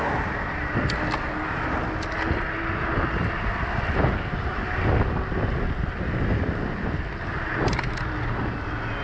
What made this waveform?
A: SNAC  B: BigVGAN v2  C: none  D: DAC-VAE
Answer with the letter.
C